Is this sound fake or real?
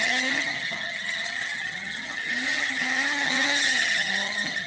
fake